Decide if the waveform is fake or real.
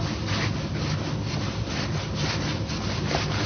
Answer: real